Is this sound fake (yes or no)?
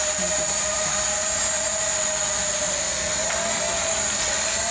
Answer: no